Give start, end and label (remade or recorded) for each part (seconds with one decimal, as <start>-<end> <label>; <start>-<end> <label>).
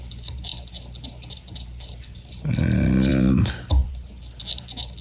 0.0-5.0 recorded